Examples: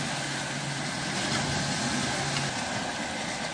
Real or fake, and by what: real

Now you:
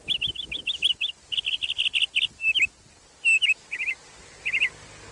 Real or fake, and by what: real